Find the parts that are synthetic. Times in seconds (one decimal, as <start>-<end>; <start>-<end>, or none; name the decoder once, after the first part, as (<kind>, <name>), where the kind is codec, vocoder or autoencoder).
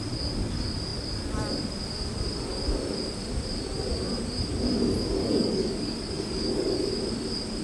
5.2-6.9 (codec, DAC)